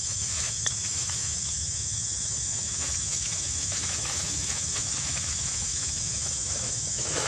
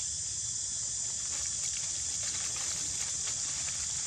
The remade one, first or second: first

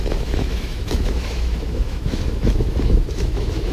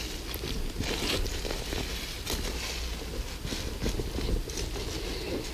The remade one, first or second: first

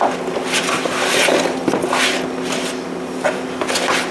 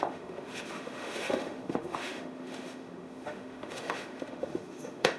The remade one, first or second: second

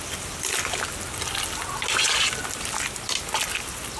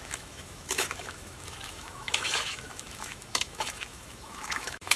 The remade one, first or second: second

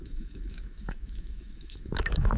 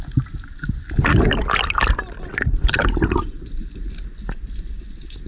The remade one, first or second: first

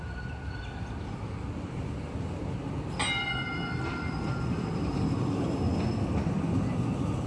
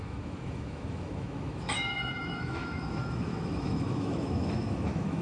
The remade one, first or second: second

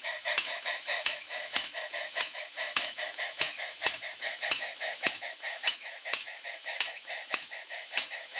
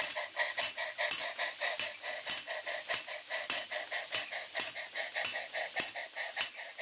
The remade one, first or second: first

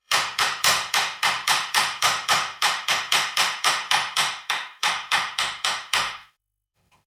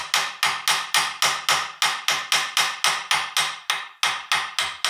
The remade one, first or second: first